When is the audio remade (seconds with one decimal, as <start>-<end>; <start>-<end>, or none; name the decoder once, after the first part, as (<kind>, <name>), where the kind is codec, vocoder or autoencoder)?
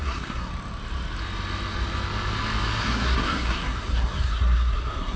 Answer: 0.0-0.5 (codec, SNAC); 2.8-5.2